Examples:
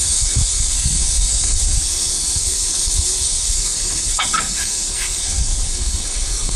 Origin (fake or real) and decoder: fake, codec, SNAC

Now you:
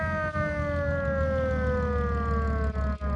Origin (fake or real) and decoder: real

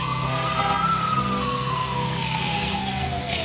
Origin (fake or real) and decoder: fake, codec, SNAC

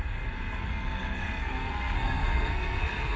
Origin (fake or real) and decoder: fake, codec, SNAC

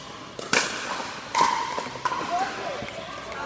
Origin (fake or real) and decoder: real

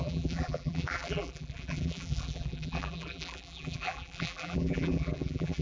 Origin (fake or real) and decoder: fake, vocoder, BigVGAN v2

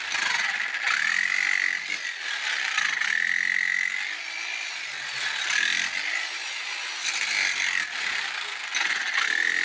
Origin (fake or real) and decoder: real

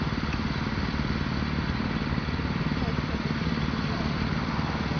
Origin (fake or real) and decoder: real